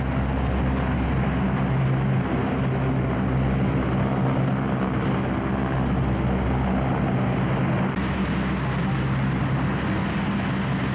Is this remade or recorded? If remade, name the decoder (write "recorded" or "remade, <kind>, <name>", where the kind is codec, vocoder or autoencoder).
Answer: recorded